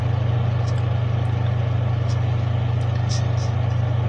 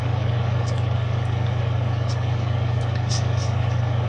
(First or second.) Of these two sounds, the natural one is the first